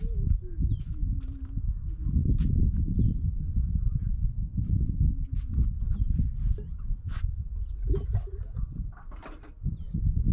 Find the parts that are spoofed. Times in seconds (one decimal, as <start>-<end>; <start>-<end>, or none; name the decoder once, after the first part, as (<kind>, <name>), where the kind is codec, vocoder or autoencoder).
none

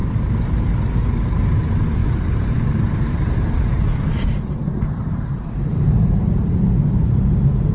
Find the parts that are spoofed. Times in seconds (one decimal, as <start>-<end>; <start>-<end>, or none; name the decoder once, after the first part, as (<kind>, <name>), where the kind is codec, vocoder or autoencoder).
2.0-6.6 (vocoder, BigVGAN v2)

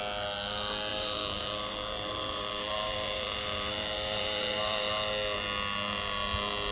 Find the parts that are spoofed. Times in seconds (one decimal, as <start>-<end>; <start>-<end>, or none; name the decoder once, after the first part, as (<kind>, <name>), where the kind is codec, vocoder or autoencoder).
0.9-4.9 (vocoder, BigVGAN v2)

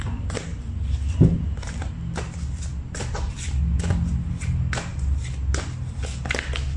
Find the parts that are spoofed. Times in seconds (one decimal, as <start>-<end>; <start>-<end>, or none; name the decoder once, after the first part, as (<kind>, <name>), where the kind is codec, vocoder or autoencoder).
none

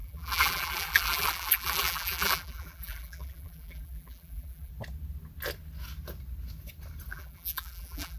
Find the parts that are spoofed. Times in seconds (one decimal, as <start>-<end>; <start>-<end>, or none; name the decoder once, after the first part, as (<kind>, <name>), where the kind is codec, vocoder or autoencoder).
0.0-4.7 (vocoder, BigVGAN v2); 7.1-8.2

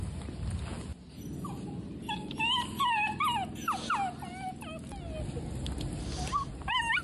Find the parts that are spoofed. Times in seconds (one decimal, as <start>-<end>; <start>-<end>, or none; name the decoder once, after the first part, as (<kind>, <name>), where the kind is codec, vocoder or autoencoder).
none

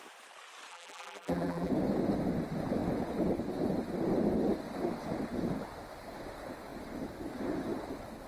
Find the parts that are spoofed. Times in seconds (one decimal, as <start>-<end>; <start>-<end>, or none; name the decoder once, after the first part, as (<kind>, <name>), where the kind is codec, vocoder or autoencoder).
0.7-1.7 (vocoder, BigVGAN v2)

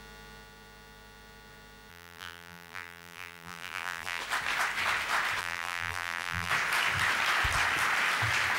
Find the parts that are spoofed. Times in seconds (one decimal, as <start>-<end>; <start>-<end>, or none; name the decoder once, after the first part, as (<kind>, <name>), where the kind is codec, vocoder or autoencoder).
1.9-4.2 (vocoder, BigVGAN v2); 5.4-6.5